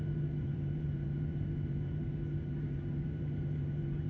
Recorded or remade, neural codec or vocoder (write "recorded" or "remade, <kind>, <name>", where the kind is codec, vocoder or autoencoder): remade, vocoder, BigVGAN v2